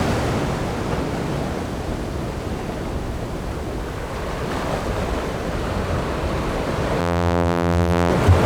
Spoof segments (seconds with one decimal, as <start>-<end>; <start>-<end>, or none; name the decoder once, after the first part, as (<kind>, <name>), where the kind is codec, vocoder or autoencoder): 7.0-8.1 (vocoder, BigVGAN v2)